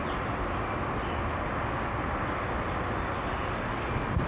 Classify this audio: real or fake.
real